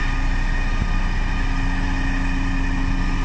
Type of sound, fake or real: real